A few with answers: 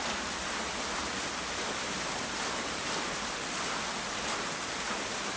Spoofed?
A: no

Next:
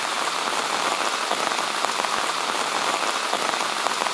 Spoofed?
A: no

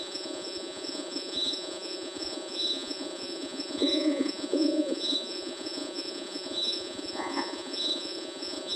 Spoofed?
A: yes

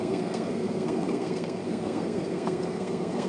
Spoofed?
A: yes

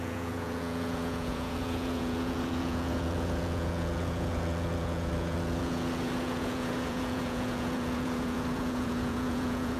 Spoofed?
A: yes